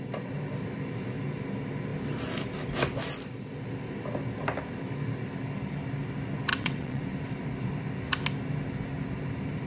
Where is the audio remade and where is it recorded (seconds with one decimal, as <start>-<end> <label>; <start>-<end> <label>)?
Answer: 0.0-6.5 recorded; 6.5-7.0 remade; 7.0-9.7 recorded